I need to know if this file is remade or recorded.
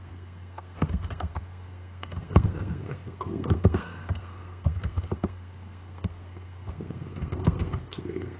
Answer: remade